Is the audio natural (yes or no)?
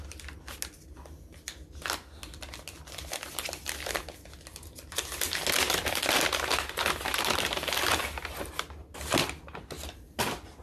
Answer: yes